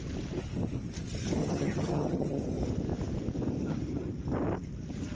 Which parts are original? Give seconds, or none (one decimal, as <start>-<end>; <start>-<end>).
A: 0.0-1.4; 2.4-5.1